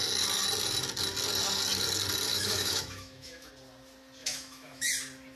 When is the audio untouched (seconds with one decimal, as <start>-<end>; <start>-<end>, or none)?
0.0-2.3; 3.5-4.2; 4.9-5.4